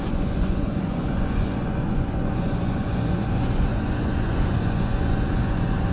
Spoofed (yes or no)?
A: yes